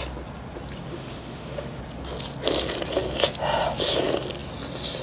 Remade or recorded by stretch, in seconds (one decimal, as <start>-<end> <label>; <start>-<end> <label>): 0.0-0.9 recorded; 0.9-1.8 remade; 1.8-5.0 recorded